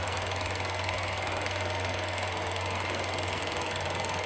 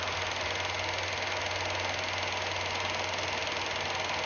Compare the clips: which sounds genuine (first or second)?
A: second